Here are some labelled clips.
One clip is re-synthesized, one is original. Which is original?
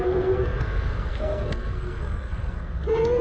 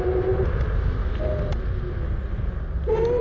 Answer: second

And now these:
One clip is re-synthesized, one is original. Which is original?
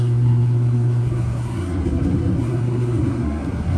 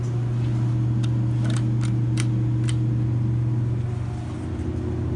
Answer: second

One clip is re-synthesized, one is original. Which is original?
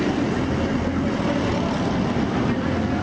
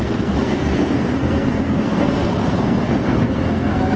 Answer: first